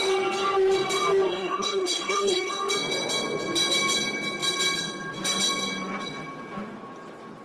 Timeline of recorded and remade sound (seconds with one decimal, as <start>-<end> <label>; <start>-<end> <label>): 0.0-1.3 recorded; 1.3-2.5 remade; 2.5-7.4 recorded